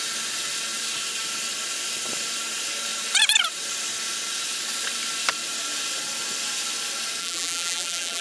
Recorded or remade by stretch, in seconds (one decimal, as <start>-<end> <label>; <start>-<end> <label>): 0.0-7.2 recorded; 7.2-8.2 remade